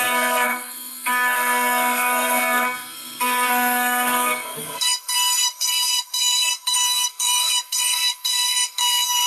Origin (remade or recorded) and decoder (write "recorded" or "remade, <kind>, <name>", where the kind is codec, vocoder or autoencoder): remade, codec, SNAC